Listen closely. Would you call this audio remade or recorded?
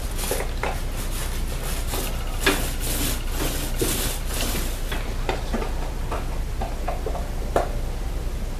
recorded